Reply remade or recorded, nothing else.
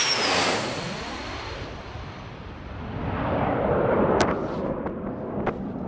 remade